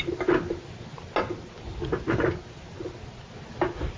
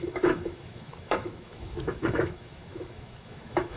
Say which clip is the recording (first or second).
first